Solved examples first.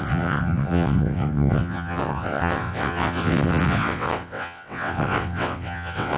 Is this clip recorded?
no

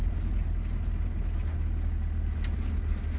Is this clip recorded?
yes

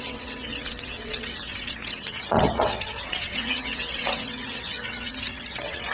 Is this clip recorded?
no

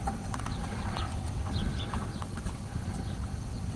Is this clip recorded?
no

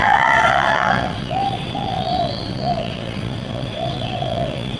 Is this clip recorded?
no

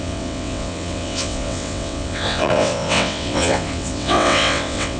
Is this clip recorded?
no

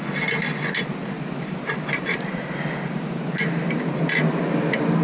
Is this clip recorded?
yes